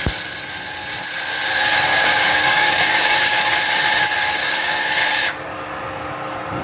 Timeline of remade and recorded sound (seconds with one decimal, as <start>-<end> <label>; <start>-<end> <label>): 0.0-1.9 recorded; 1.9-3.4 remade; 3.4-4.4 recorded; 4.4-5.4 remade; 5.4-6.6 recorded